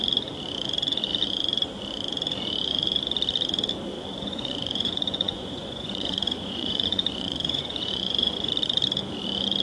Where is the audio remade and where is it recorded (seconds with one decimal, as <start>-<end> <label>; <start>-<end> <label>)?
0.0-4.1 recorded; 4.1-8.5 remade; 8.5-9.6 recorded